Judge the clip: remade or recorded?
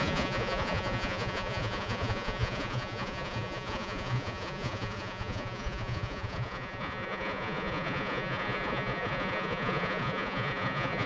remade